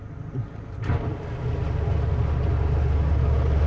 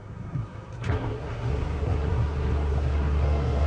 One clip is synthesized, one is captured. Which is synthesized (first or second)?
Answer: second